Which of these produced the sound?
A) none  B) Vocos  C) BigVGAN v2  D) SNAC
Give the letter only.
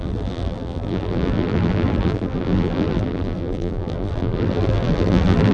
C